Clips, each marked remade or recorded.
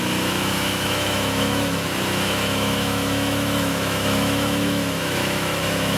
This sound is remade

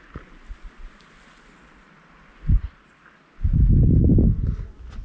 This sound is recorded